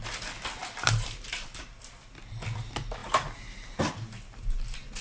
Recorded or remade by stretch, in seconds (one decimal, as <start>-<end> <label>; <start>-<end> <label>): 0.0-0.6 recorded; 0.6-1.5 remade; 1.5-3.0 recorded; 3.0-3.9 remade; 3.9-5.0 recorded